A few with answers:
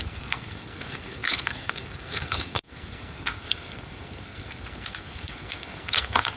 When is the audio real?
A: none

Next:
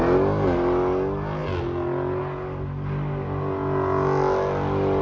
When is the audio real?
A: 0.0-5.0

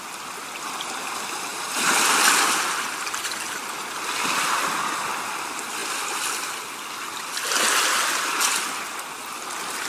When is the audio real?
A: 0.0-9.9

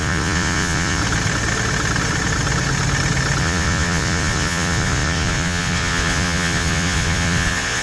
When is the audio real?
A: 1.0-3.4

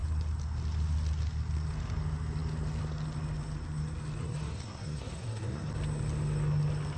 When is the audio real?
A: 0.0-4.2; 5.7-7.0